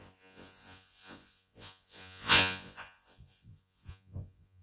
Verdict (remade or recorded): remade